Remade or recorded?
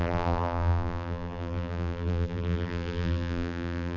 remade